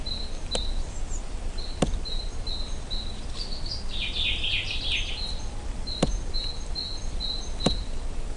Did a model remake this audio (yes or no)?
no